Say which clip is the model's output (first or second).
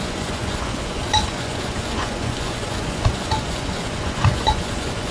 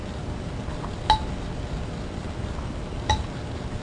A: first